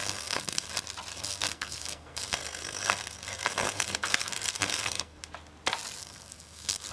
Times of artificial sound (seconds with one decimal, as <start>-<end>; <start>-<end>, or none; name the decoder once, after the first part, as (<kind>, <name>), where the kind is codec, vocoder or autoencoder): 0.0-0.7 (codec, SNAC); 1.1-5.2; 6.0-6.9